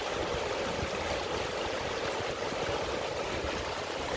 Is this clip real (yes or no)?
yes